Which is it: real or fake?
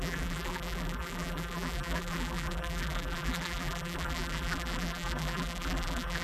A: fake